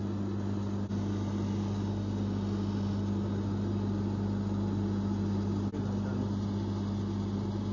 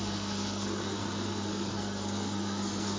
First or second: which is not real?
second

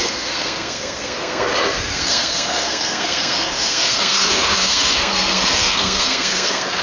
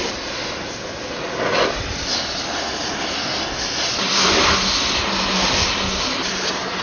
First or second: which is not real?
first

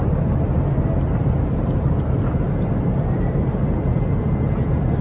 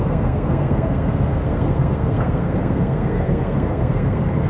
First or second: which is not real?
second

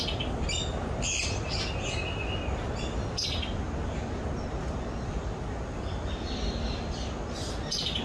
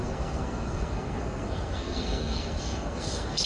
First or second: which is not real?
second